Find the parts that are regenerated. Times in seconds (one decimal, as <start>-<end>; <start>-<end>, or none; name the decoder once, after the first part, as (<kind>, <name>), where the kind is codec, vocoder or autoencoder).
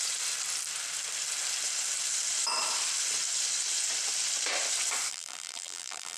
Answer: 5.1-6.2 (vocoder, BigVGAN v2)